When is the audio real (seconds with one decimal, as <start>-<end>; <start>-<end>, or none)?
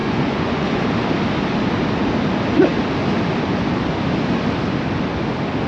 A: 0.8-5.7